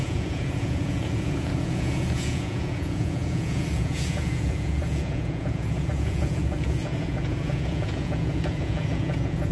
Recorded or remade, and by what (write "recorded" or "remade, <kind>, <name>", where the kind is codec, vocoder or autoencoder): remade, vocoder, Vocos